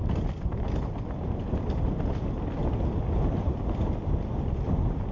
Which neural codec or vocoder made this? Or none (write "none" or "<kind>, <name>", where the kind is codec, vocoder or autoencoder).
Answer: none